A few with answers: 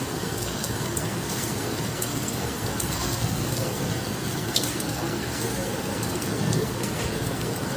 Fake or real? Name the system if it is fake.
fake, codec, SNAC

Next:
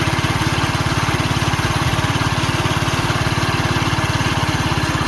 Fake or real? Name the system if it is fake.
real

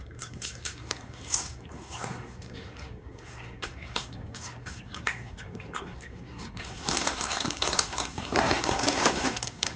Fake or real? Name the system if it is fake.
fake, codec, SNAC